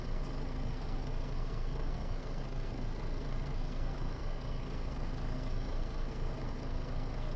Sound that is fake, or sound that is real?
fake